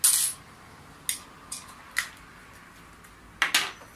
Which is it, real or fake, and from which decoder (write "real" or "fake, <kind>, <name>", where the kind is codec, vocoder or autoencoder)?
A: real